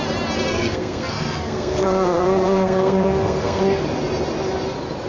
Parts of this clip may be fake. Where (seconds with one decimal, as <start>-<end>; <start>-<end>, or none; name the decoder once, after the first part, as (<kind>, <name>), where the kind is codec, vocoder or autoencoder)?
0.5-3.6 (codec, SNAC)